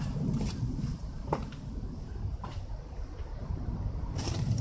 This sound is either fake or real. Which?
fake